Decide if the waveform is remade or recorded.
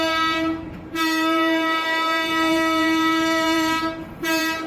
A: remade